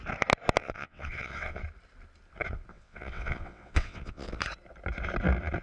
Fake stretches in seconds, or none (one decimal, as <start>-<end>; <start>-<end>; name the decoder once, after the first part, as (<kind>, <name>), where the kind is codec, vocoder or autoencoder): 0.6-1.6 (vocoder, WaveNeXt); 2.7-4.4